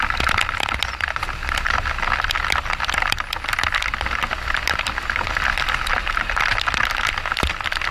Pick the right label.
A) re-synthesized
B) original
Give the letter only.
B